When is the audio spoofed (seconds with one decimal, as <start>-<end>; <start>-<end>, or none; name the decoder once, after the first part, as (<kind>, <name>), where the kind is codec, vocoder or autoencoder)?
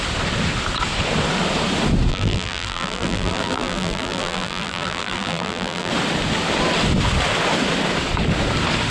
2.1-5.9 (vocoder, BigVGAN v2)